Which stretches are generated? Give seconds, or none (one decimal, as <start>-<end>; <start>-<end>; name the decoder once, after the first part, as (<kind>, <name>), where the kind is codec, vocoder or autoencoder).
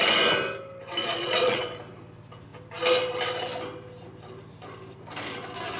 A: 1.0-1.6 (vocoder, Vocos)